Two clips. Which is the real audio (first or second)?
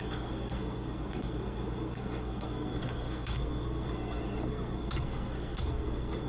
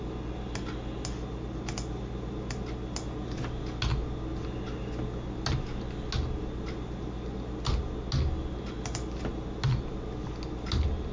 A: second